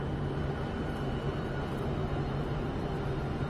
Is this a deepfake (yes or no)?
no